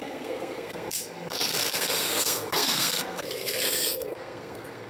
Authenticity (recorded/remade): remade